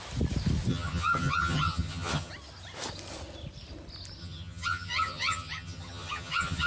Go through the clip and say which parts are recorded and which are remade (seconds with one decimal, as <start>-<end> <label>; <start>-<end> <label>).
0.0-0.7 recorded; 0.7-2.3 remade; 2.3-4.2 recorded; 4.2-6.7 remade